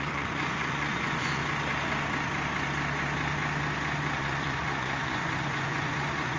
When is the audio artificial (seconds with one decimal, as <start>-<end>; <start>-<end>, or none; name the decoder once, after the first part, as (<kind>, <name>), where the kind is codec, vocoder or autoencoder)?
0.0-1.4 (vocoder, Vocos); 4.2-6.4